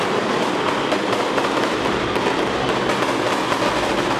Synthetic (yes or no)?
no